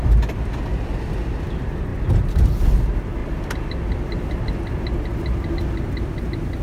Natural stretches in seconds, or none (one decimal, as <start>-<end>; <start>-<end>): 0.0-6.6